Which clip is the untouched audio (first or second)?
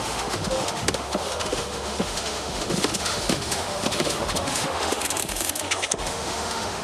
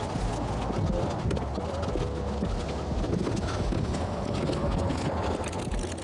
second